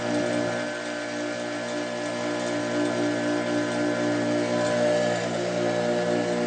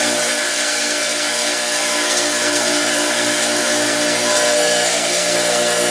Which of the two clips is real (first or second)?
first